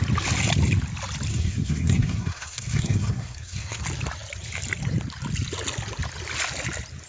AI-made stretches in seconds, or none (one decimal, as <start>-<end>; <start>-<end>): 1.3-3.8